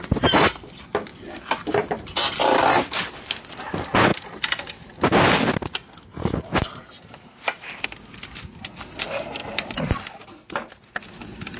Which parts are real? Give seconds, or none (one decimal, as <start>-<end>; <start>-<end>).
0.0-1.1; 3.5-9.4; 10.7-11.6